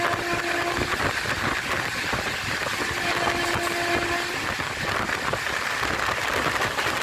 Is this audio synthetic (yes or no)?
no